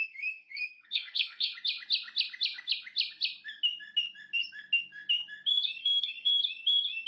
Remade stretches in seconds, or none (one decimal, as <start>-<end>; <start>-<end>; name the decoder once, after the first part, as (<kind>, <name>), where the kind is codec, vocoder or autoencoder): 0.0-1.5 (codec, SNAC); 5.8-6.3